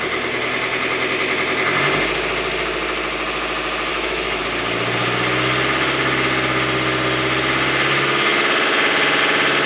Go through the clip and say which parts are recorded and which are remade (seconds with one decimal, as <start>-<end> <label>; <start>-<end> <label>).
0.0-3.9 recorded; 3.9-4.4 remade; 4.4-9.7 recorded